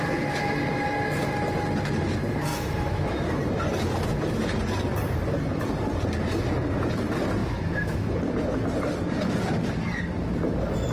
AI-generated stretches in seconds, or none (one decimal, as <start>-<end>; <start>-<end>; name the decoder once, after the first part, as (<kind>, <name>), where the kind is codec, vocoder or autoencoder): 2.5-3.1 (autoencoder, DAC-VAE); 7.4-8.2